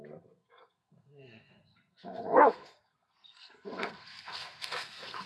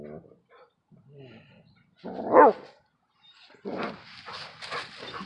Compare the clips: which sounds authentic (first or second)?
second